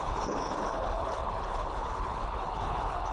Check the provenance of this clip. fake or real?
fake